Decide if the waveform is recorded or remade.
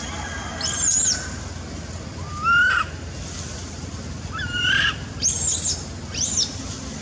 recorded